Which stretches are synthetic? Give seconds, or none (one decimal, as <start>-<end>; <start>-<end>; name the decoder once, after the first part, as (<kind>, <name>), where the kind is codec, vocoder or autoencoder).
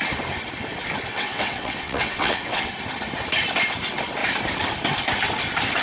1.1-2.7 (vocoder, WaveNeXt)